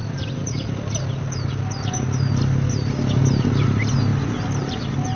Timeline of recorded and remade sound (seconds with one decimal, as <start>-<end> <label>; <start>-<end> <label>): 0.0-5.2 recorded